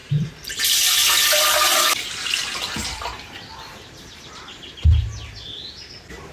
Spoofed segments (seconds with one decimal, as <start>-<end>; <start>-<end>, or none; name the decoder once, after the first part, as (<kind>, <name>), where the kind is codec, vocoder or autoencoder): 0.0-0.6 (vocoder, BigVGAN v2); 2.8-4.3